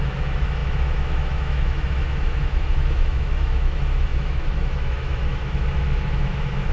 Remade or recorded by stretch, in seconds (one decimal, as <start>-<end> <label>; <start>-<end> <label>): 0.0-6.7 remade